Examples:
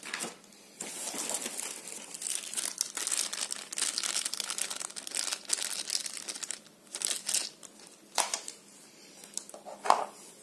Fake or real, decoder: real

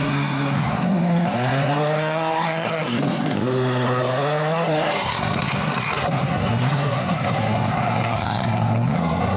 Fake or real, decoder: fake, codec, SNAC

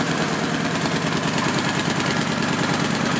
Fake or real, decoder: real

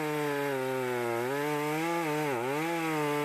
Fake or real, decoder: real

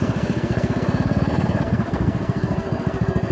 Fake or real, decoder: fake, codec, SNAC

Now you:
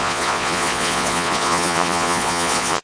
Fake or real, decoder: fake, vocoder, Vocos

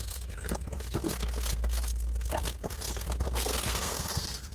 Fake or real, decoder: fake, codec, SNAC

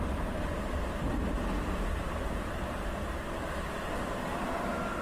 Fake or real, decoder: real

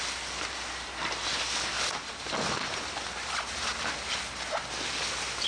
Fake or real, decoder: real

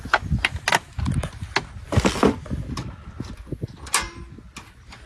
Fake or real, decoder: real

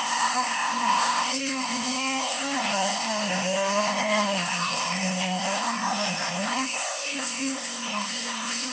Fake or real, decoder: fake, codec, SNAC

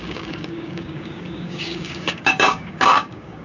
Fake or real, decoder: fake, codec, DAC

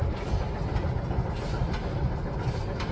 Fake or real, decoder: real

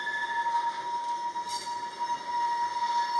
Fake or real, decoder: real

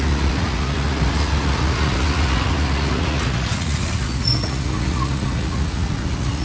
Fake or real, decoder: fake, vocoder, Vocos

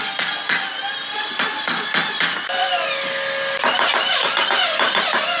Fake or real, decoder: real